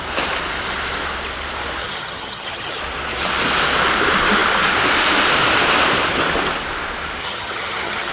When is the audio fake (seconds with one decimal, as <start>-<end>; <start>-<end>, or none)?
1.8-2.8; 7.2-8.1